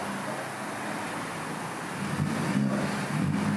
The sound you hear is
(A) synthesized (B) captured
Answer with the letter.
B